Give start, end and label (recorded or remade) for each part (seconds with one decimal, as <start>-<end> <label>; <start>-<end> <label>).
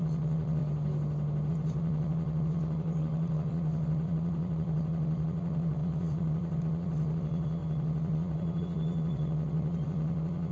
0.0-0.6 remade; 0.6-1.5 recorded; 1.5-10.5 remade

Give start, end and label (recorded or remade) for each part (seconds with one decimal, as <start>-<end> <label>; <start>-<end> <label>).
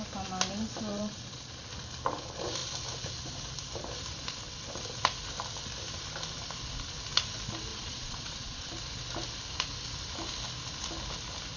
0.0-0.9 recorded; 0.9-1.6 remade; 1.6-7.7 recorded; 7.7-8.7 remade; 8.7-11.6 recorded